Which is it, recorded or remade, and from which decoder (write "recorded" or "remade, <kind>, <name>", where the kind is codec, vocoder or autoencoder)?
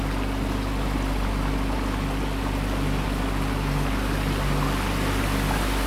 recorded